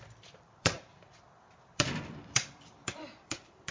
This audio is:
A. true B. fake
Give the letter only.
B